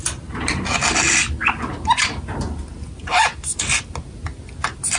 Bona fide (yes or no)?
yes